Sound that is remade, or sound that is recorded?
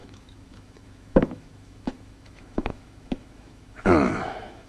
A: remade